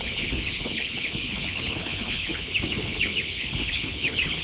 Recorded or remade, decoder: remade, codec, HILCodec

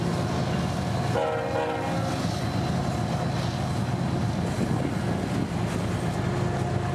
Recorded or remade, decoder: recorded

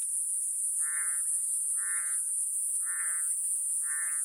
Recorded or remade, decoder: remade, vocoder, Vocos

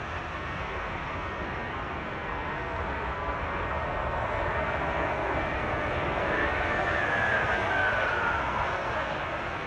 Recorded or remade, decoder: remade, codec, SNAC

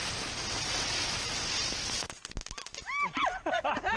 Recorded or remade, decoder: recorded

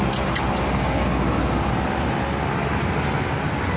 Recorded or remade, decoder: recorded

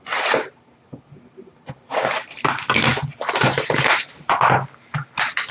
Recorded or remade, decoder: recorded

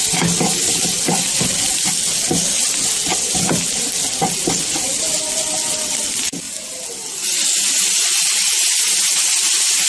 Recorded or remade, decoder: recorded